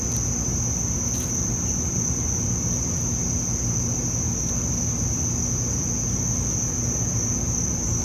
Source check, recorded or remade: recorded